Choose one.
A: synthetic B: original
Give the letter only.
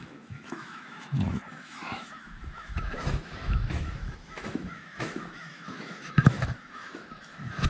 A